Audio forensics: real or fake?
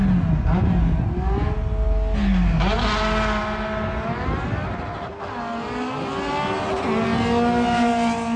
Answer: real